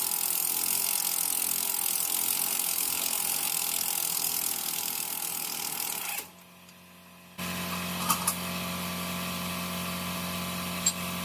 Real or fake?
real